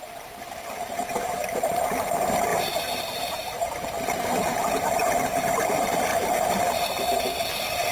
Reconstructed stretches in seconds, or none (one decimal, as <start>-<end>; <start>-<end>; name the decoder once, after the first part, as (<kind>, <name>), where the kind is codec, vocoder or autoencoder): 0.0-2.5 (vocoder, BigVGAN v2); 3.3-7.9